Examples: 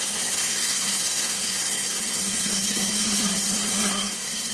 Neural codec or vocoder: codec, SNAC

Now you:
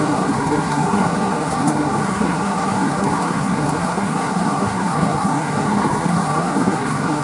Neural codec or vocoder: codec, SNAC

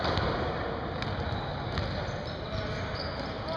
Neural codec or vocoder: none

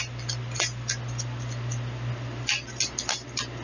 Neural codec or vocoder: none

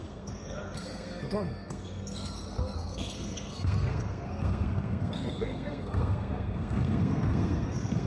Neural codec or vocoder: codec, SNAC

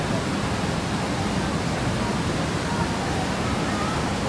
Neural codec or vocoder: none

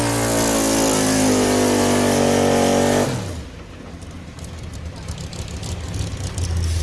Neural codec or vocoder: none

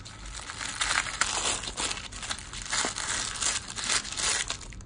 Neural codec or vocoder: none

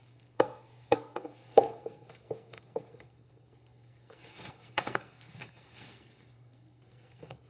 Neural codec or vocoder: codec, SNAC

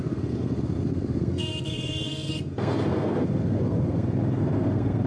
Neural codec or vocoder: codec, SNAC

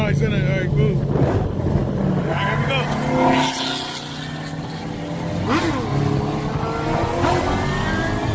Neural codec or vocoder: none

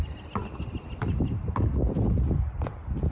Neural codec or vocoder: none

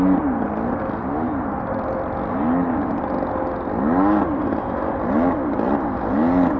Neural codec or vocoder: none